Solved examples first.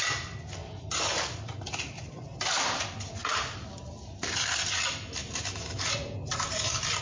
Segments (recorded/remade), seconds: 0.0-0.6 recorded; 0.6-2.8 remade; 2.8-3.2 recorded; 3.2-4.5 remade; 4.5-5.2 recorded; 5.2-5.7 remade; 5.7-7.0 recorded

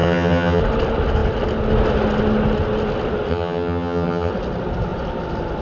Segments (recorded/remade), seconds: 0.0-0.6 remade; 0.6-3.3 recorded; 3.3-4.3 remade; 4.3-5.6 recorded